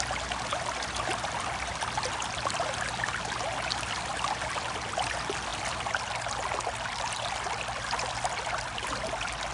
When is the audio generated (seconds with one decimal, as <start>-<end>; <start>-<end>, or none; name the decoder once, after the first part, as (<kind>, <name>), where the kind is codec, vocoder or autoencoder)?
none